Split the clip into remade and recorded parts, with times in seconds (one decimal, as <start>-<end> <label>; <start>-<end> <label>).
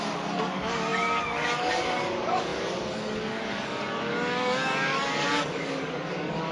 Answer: 0.0-6.5 remade